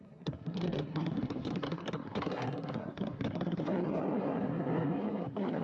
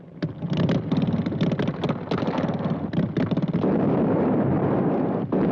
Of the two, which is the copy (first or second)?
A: first